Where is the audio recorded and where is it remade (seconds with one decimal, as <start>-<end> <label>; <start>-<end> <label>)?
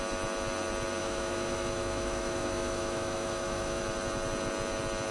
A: 0.0-1.0 recorded; 1.0-3.8 remade; 3.8-5.1 recorded